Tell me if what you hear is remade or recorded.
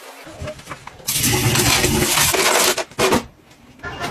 recorded